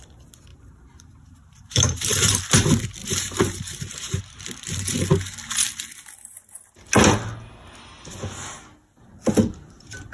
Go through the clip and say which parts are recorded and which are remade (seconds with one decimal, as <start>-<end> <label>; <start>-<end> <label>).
0.0-0.5 recorded; 0.5-2.4 remade; 2.4-3.0 recorded; 3.0-4.2 remade; 4.2-10.1 recorded